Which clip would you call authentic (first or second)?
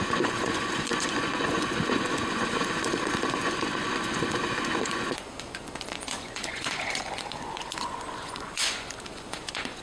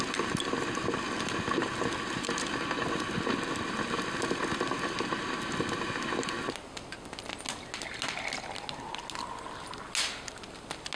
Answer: second